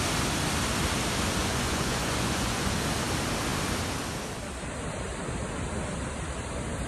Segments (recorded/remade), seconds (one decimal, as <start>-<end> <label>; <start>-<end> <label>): 0.0-1.4 recorded; 1.4-2.7 remade; 2.7-6.9 recorded